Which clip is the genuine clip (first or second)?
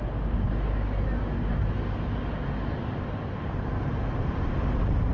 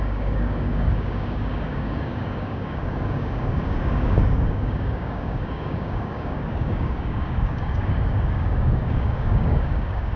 first